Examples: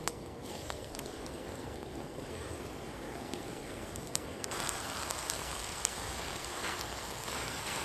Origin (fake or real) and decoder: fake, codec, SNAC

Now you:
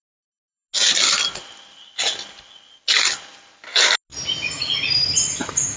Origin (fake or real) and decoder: real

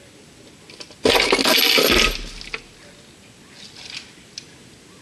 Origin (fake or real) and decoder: real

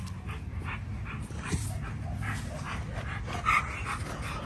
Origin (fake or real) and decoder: real